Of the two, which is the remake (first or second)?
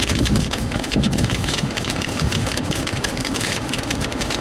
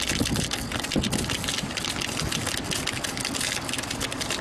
first